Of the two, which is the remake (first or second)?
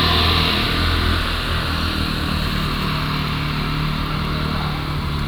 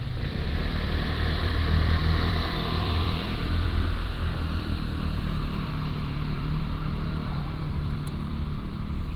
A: second